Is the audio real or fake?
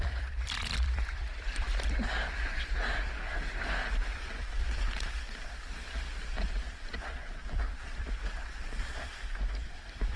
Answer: fake